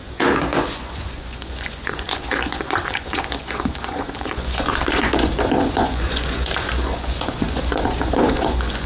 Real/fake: fake